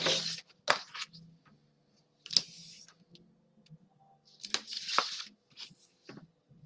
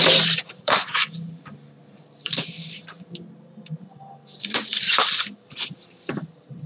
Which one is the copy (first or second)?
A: second